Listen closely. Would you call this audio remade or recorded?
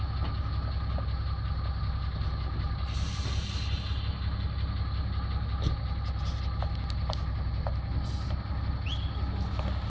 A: recorded